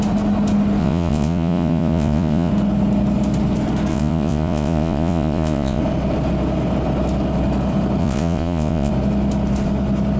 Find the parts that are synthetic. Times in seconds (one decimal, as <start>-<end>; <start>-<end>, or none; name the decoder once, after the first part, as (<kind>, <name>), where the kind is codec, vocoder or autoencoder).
0.8-2.5 (vocoder, Vocos); 3.9-5.8; 8.0-8.9